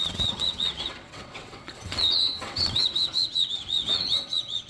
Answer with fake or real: fake